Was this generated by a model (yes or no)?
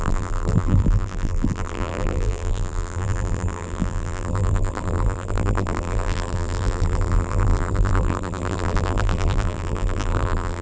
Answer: yes